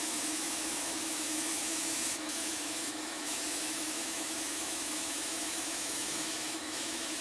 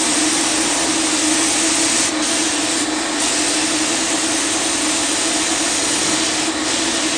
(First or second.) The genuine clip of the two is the second